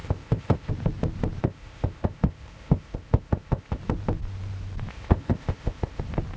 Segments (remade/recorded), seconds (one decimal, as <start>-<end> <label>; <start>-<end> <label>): 0.0-0.7 remade; 0.7-1.4 recorded; 1.4-3.8 remade; 3.8-4.9 recorded; 4.9-6.0 remade; 6.0-6.4 recorded